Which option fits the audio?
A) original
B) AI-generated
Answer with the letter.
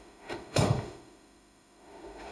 B